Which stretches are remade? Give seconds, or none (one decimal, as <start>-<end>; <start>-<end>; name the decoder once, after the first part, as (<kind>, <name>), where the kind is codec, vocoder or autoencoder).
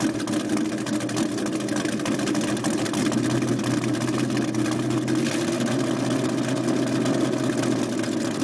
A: none